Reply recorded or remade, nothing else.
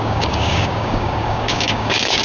remade